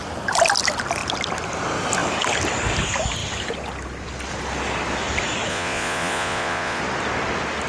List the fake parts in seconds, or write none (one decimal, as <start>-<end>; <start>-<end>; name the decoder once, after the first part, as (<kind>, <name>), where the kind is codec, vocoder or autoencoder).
5.5-6.8 (vocoder, Vocos)